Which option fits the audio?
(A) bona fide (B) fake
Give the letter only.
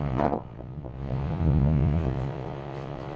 B